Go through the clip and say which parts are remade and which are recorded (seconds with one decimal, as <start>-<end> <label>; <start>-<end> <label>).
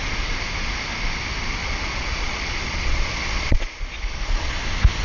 0.0-1.6 recorded; 1.6-4.6 remade; 4.6-5.0 recorded